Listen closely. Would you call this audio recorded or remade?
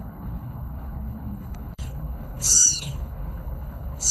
remade